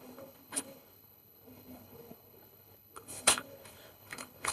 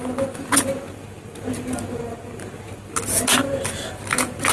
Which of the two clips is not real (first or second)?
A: first